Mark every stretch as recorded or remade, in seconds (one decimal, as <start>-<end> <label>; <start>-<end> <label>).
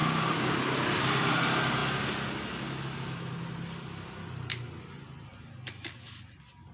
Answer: 0.0-1.0 remade; 1.0-6.7 recorded